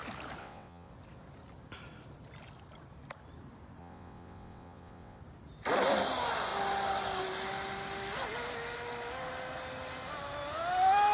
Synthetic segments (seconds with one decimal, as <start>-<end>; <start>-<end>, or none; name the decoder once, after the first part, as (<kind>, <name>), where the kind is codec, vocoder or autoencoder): 0.4-0.9 (vocoder, WaveNeXt); 3.8-5.2